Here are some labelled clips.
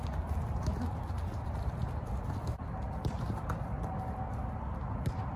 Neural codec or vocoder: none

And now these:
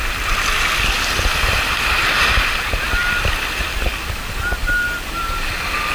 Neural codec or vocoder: none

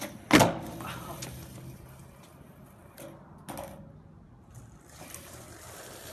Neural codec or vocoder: none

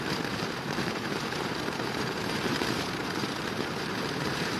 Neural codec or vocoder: vocoder, BigVGAN v2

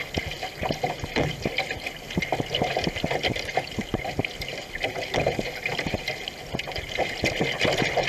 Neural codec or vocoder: none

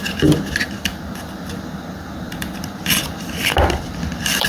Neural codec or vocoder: vocoder, BigVGAN v2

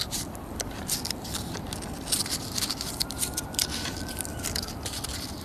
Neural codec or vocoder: vocoder, BigVGAN v2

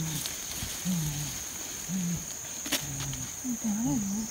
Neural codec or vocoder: none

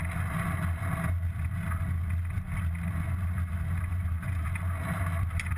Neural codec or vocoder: none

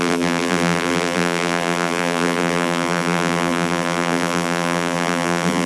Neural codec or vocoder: vocoder, BigVGAN v2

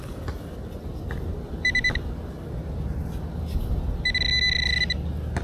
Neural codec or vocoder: none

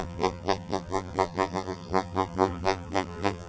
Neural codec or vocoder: vocoder, BigVGAN v2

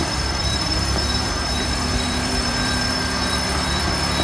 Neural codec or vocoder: vocoder, BigVGAN v2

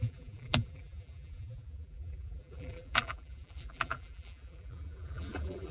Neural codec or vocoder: vocoder, BigVGAN v2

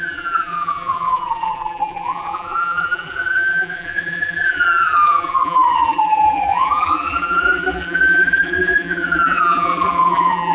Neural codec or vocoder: vocoder, BigVGAN v2